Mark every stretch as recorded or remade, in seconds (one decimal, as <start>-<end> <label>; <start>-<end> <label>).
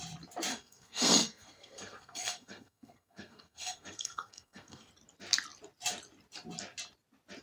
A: 0.0-0.5 recorded; 0.5-4.9 remade; 4.9-7.4 recorded